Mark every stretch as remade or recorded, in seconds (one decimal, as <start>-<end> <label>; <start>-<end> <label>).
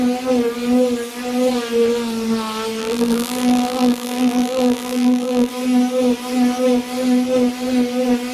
0.0-2.8 recorded; 2.8-5.5 remade; 5.5-8.3 recorded